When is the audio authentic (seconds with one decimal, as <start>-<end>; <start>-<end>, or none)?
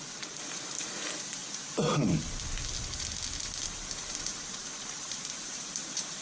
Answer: 1.4-3.6